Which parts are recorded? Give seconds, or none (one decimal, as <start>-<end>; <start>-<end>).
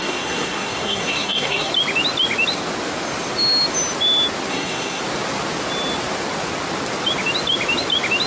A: 1.7-4.5; 5.0-8.3